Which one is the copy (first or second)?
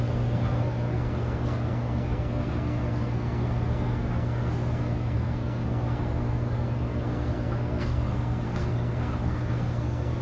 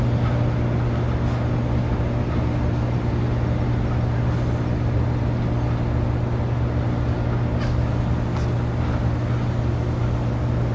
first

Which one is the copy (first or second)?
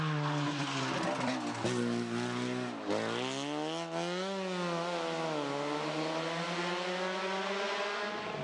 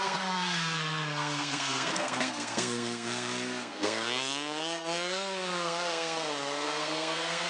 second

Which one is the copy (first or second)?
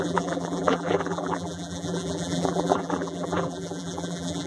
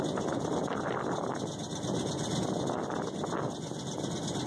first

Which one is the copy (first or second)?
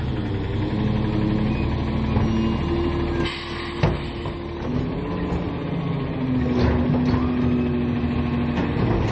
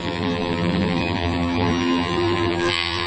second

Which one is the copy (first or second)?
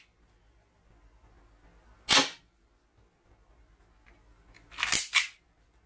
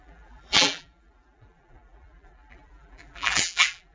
second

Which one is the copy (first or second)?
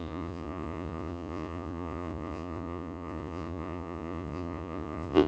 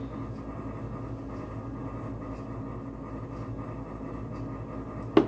first